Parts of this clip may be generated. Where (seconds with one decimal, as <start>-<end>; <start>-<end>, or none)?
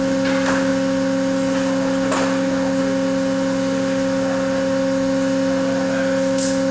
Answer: none